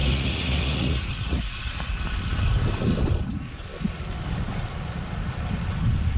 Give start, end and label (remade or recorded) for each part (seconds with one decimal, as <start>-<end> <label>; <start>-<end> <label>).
0.0-2.0 remade; 2.0-6.2 recorded